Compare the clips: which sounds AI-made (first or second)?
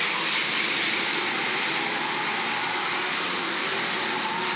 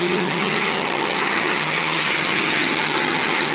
second